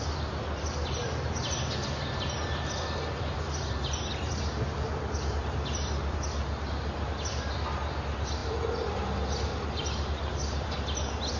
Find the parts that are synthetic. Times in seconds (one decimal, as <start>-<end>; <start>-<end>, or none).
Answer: none